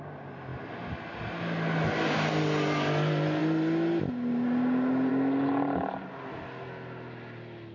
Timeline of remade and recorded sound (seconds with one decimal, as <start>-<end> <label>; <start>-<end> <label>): 0.0-7.7 recorded